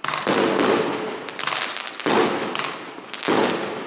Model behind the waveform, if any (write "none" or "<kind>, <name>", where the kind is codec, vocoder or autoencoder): none